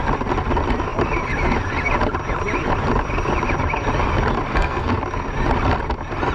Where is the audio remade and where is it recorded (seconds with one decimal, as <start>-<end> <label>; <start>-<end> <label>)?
0.0-4.5 recorded; 4.5-5.0 remade; 5.0-6.3 recorded